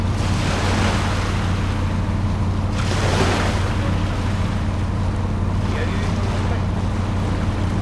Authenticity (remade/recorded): recorded